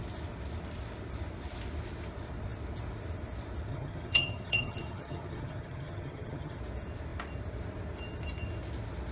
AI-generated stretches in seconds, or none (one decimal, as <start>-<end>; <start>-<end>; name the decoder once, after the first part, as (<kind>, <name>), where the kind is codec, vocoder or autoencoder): 3.7-6.6 (vocoder, HiFi-GAN)